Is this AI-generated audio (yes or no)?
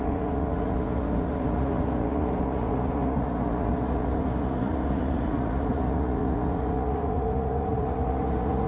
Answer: yes